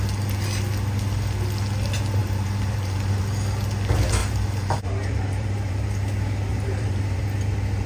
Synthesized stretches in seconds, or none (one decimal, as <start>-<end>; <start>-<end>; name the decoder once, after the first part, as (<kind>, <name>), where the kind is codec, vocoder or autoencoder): 2.2-3.2 (vocoder, BigVGAN v2); 4.2-6.0; 6.5-7.2